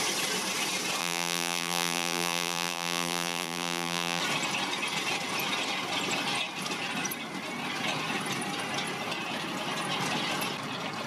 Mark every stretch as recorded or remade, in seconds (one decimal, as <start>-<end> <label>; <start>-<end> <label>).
0.0-1.0 recorded; 1.0-4.2 remade; 4.2-11.1 recorded